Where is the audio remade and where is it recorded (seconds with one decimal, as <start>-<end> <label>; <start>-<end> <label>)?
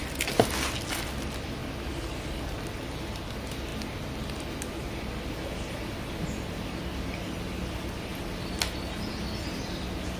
0.0-1.6 recorded; 1.6-2.4 remade; 2.4-8.1 recorded; 8.1-9.6 remade; 9.6-10.2 recorded